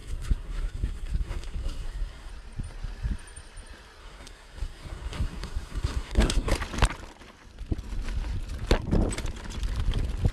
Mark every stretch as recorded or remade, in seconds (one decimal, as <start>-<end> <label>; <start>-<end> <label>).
0.0-2.3 remade; 2.3-4.0 recorded; 4.0-6.5 remade; 6.5-10.3 recorded